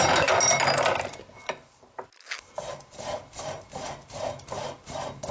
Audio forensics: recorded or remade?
recorded